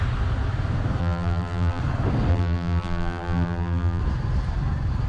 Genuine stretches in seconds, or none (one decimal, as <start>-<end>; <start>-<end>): 0.0-1.0; 1.8-2.3; 4.0-5.1